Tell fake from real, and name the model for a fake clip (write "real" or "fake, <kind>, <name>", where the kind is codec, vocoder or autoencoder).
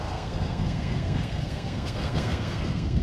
fake, codec, SNAC